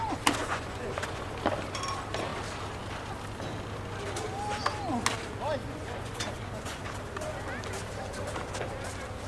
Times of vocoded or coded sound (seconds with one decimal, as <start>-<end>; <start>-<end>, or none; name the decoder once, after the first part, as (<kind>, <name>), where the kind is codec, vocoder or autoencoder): 0.4-1.3 (vocoder, Vocos); 5.6-6.8